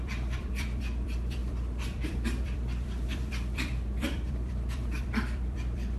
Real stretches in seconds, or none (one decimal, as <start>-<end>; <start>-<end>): none